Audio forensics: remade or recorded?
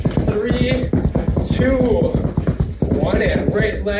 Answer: recorded